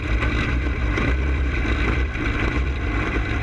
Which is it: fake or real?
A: fake